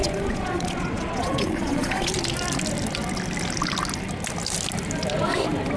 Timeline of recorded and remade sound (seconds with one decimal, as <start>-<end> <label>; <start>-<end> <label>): 0.0-2.1 remade; 2.1-5.8 recorded